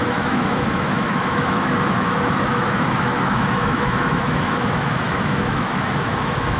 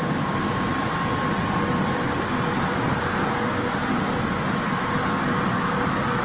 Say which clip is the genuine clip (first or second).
second